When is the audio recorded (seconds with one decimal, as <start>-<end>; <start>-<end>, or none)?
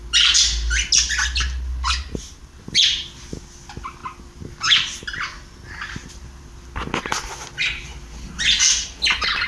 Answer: 0.0-9.5